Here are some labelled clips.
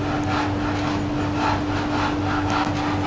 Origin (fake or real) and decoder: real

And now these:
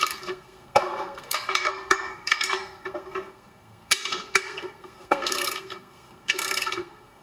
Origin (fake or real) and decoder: fake, codec, SNAC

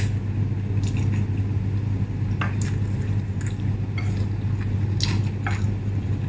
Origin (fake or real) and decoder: real